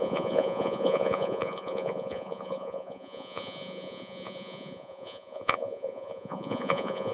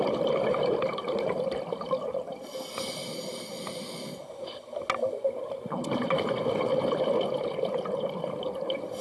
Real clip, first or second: second